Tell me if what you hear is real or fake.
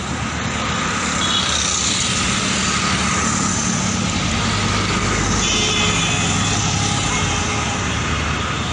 real